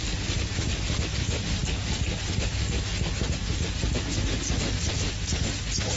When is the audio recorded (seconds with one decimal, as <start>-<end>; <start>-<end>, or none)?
0.0-6.0